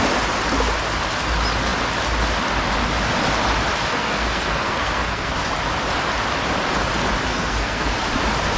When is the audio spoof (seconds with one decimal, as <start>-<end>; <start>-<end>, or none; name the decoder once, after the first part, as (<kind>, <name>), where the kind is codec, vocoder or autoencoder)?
3.8-5.3 (codec, SNAC); 7.3-7.9